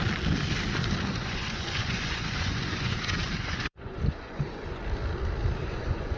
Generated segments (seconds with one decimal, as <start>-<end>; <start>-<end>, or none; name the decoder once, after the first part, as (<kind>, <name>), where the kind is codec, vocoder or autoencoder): 1.1-4.8 (vocoder, Vocos); 5.6-6.2